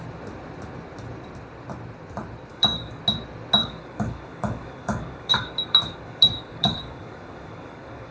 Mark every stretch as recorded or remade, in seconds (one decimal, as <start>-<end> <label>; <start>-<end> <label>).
0.0-2.5 recorded; 2.5-3.0 remade; 3.0-3.6 recorded; 3.6-8.1 remade

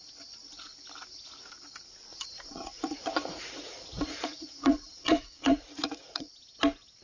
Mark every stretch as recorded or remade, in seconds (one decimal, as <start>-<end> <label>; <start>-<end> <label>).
0.0-2.1 recorded; 2.1-6.3 remade; 6.3-7.0 recorded

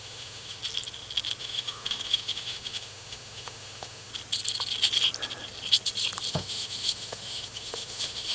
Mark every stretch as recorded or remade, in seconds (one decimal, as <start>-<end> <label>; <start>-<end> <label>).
0.0-0.6 remade; 0.6-1.4 recorded; 1.4-4.1 remade; 4.1-6.3 recorded; 6.3-8.3 remade

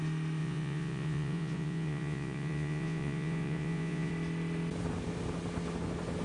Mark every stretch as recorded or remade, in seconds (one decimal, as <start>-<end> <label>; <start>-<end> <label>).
0.0-0.4 recorded; 0.4-4.1 remade; 4.1-6.2 recorded

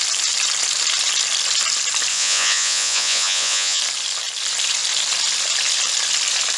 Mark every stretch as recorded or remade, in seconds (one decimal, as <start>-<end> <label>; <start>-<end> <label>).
0.0-2.1 recorded; 2.1-3.8 remade; 3.8-6.6 recorded

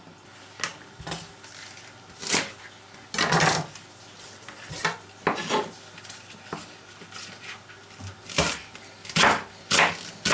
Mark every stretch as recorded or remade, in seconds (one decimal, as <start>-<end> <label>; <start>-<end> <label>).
0.0-10.3 recorded

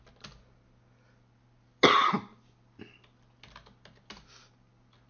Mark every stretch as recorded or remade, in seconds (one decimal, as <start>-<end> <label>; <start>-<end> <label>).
0.0-5.1 recorded